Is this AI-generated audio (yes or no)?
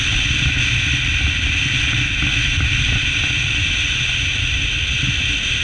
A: no